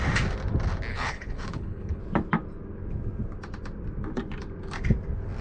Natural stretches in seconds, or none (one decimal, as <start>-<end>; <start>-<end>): 0.0-0.9; 2.0-5.4